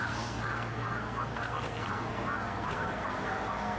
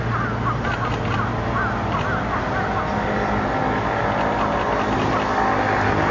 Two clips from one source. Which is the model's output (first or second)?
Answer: first